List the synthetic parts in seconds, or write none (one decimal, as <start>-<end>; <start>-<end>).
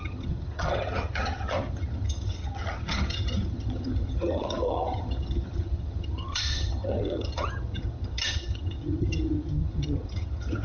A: 0.0-10.6